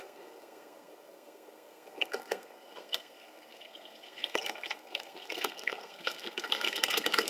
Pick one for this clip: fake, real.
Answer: fake